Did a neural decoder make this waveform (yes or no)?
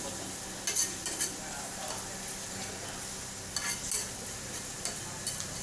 no